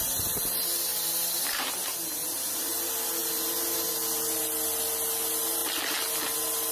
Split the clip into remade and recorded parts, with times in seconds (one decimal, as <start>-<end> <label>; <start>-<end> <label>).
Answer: 0.0-6.7 recorded